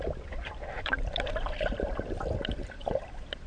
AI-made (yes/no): yes